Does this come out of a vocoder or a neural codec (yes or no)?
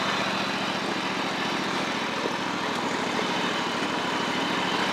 no